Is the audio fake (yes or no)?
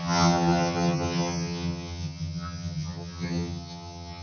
yes